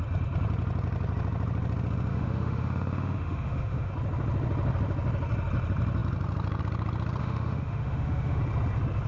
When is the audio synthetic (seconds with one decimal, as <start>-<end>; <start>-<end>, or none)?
2.1-3.9; 7.2-8.4